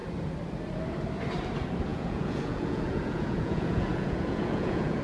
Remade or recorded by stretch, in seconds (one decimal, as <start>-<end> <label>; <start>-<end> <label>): 0.0-1.9 recorded; 1.9-5.0 remade